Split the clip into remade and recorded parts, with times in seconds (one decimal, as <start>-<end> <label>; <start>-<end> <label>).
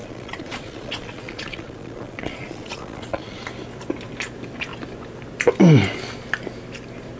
0.0-3.5 remade; 3.5-7.2 recorded